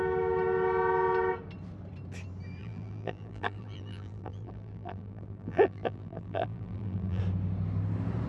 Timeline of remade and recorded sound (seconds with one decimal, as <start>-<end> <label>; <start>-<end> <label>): 0.0-2.6 recorded; 2.6-7.2 remade; 7.2-8.3 recorded